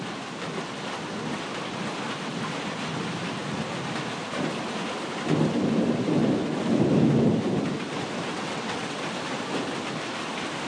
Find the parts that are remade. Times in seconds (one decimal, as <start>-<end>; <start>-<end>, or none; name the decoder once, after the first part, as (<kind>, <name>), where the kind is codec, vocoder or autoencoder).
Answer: 8.3-9.0 (vocoder, WaveNeXt)